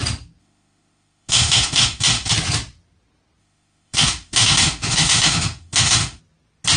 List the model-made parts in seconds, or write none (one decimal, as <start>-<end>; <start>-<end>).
0.4-2.3; 3.4-6.2